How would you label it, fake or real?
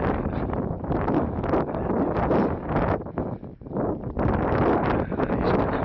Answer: real